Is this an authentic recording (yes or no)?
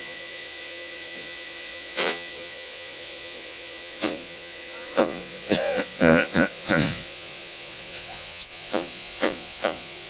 no